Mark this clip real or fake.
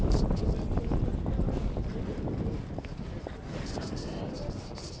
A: real